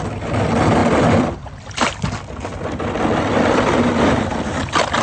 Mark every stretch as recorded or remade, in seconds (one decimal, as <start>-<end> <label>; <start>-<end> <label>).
0.0-5.0 recorded